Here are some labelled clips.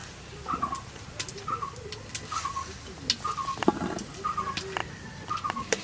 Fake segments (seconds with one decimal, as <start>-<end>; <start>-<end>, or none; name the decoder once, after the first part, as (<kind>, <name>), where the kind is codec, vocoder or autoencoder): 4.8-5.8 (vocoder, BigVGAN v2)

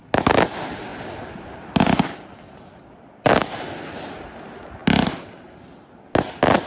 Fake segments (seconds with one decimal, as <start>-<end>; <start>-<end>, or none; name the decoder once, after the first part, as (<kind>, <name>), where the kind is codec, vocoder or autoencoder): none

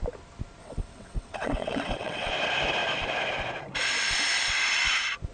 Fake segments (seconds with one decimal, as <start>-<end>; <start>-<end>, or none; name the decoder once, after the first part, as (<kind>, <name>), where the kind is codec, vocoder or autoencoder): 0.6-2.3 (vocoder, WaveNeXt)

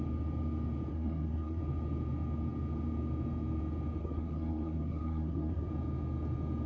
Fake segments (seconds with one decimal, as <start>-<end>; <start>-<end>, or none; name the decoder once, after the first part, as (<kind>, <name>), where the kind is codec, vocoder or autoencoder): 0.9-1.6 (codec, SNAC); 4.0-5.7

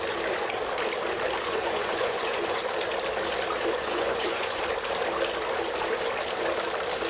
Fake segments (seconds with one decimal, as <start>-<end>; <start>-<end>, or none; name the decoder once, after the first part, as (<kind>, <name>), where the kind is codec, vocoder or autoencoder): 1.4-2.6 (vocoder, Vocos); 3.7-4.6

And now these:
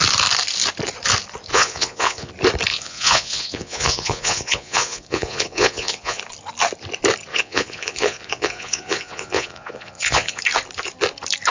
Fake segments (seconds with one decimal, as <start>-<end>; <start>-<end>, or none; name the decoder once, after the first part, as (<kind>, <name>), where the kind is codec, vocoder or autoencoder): 1.5-2.3 (vocoder, Vocos); 2.7-6.2; 7.3-10.4